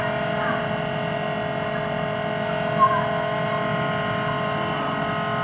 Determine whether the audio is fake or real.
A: real